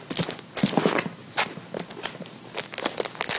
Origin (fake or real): real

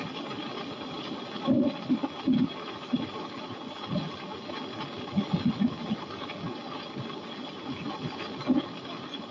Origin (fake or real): real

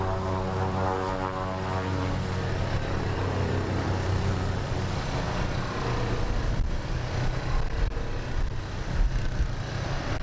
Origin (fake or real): real